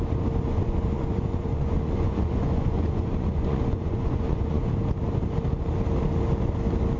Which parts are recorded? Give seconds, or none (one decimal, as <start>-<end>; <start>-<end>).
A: 0.0-0.5; 4.7-7.0